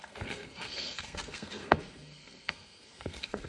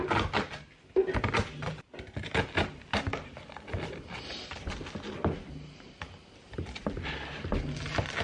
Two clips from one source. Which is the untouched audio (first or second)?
second